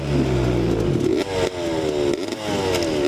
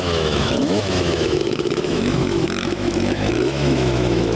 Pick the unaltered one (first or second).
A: first